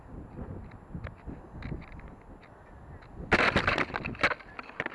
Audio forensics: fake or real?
real